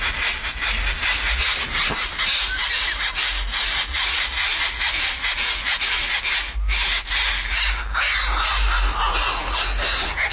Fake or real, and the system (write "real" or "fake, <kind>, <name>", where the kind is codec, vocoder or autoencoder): real